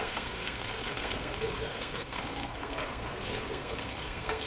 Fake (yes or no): yes